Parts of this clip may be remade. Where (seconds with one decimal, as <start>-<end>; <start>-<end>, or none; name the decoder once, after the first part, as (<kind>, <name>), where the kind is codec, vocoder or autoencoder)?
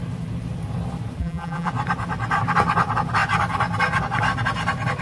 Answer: 1.2-1.7 (vocoder, BigVGAN v2)